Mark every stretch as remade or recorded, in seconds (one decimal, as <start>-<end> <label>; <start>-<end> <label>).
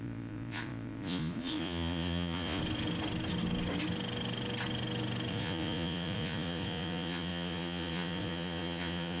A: 0.0-2.6 remade; 2.6-5.3 recorded; 5.3-9.2 remade